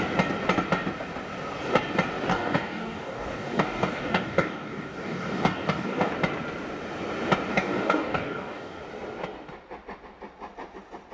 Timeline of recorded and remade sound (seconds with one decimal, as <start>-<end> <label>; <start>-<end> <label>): 0.0-2.3 recorded; 2.3-6.1 remade; 6.1-7.5 recorded; 7.5-8.8 remade; 8.8-11.1 recorded